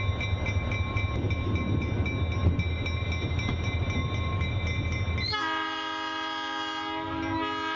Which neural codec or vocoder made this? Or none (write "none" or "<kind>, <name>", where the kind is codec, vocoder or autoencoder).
none